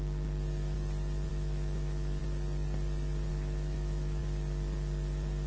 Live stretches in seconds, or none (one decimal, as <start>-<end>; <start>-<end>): 0.0-1.3; 2.2-3.3; 4.2-5.5